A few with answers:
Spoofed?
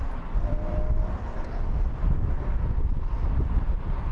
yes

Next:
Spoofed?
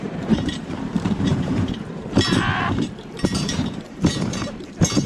yes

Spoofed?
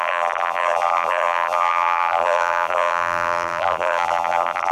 yes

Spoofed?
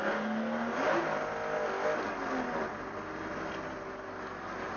no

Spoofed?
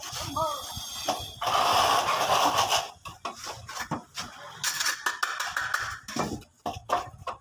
no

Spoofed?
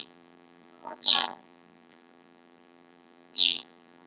yes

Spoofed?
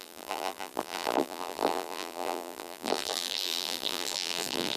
yes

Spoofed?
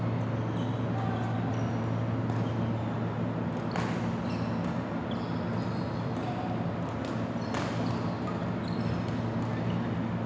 no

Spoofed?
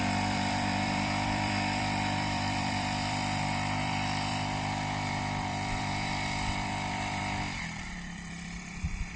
yes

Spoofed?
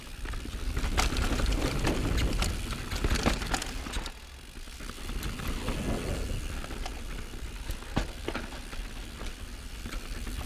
no